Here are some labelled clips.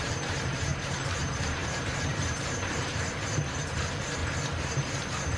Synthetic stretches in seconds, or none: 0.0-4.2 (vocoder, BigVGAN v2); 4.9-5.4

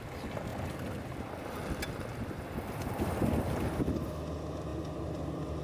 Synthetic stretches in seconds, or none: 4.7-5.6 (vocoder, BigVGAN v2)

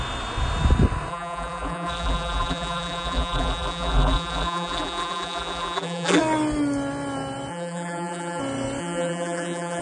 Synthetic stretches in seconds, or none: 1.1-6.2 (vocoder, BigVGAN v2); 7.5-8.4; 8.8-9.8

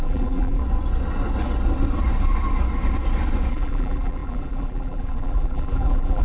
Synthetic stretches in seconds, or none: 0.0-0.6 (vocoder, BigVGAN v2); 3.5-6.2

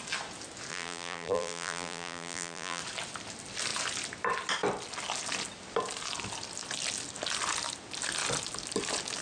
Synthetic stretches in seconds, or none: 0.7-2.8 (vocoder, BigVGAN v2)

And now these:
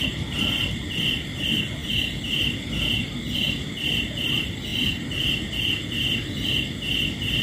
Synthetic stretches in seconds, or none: 0.0-0.8 (vocoder, BigVGAN v2); 4.7-5.7

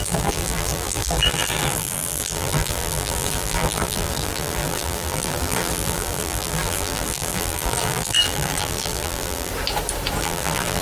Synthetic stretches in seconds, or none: 0.0-9.5 (vocoder, BigVGAN v2); 10.2-10.8